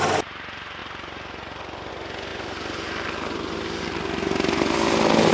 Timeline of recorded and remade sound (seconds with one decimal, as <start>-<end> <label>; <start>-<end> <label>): 0.0-0.8 recorded; 0.8-1.9 remade; 1.9-5.3 recorded